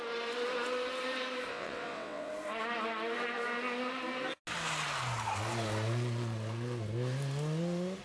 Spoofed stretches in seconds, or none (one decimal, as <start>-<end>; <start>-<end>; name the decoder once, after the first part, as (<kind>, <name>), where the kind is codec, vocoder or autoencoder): 1.5-2.3 (vocoder, WaveNeXt)